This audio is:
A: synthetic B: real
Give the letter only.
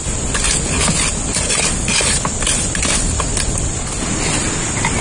B